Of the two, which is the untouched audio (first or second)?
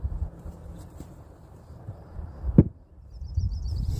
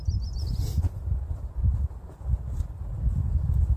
second